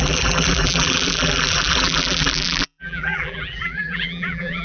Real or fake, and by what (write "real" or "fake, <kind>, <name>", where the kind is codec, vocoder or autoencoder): fake, vocoder, BigVGAN v2